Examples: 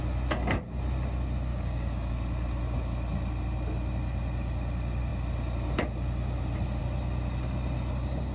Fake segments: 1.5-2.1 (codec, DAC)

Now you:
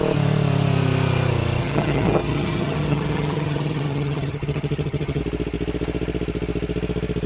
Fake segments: 1.6-5.2 (vocoder, HiFi-GAN)